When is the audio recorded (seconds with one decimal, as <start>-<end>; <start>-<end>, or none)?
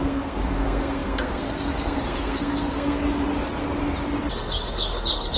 3.0-4.3